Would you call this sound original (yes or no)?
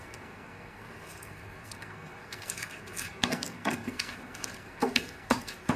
no